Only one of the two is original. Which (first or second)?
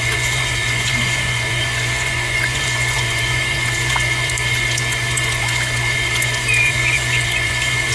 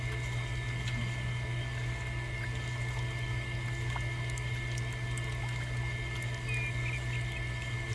second